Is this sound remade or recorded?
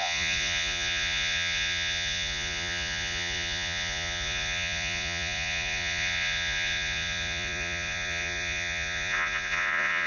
remade